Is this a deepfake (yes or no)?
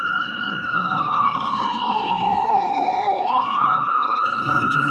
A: yes